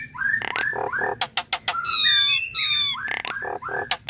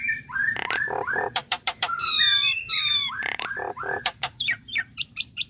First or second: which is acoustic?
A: first